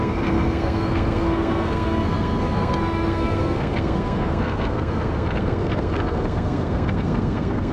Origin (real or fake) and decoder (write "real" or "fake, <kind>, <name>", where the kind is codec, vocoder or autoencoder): fake, codec, SNAC